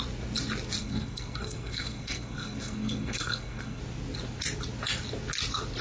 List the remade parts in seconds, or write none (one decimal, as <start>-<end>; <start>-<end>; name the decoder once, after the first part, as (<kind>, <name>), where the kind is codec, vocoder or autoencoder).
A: 0.8-3.8 (codec, SNAC)